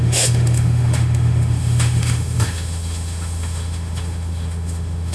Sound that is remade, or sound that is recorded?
remade